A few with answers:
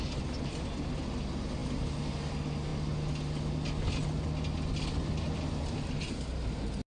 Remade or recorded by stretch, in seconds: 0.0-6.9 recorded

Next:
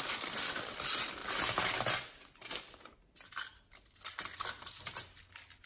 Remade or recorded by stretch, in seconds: 0.0-5.7 recorded

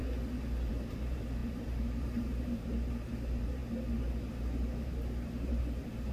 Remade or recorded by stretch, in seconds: 0.0-0.7 recorded; 0.7-3.6 remade; 3.6-4.2 recorded; 4.2-6.1 remade

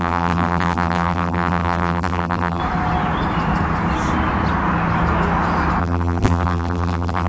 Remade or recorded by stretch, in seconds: 0.0-2.6 remade; 2.6-5.8 recorded; 5.8-7.3 remade

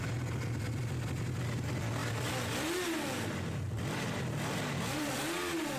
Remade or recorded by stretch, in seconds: 0.0-2.0 recorded; 2.0-5.1 remade; 5.1-5.8 recorded

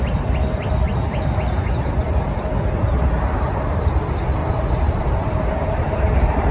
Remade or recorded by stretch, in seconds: 0.0-4.4 recorded; 4.4-6.5 remade

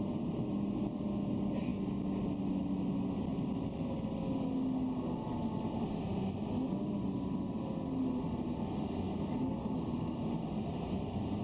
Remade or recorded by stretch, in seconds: 0.0-1.7 remade; 1.7-2.4 recorded; 2.4-11.4 remade